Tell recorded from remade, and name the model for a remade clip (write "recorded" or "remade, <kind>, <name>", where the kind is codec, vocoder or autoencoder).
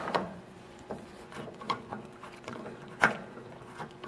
remade, vocoder, Vocos